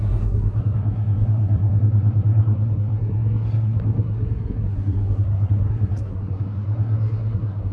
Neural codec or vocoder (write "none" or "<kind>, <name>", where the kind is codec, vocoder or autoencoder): codec, SNAC